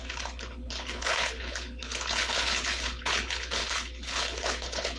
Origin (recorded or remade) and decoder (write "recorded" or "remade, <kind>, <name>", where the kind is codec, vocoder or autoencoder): remade, codec, HILCodec